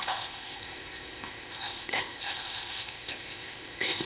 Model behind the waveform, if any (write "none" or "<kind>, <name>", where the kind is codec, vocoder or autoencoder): codec, ZipCodec